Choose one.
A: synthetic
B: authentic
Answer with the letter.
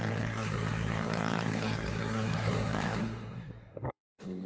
A